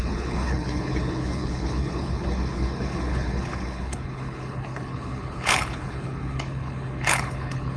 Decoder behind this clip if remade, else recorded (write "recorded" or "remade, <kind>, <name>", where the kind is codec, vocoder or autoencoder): remade, codec, HILCodec